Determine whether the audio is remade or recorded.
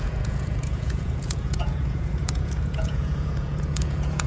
remade